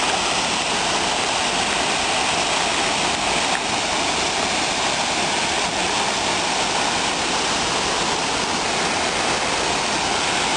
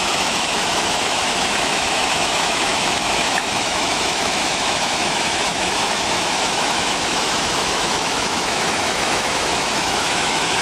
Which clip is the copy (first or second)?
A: second